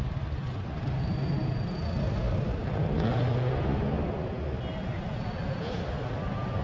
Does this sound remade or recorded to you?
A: recorded